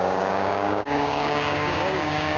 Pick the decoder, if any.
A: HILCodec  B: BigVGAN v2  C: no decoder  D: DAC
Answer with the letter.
D